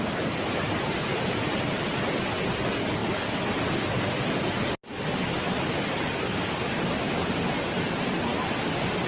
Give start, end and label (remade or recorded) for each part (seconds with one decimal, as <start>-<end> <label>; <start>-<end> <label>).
0.0-9.1 recorded